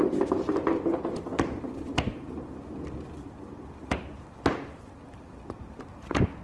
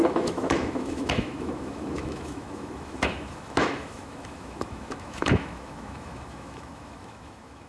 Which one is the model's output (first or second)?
second